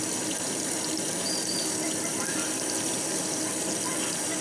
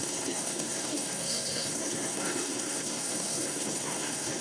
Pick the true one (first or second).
first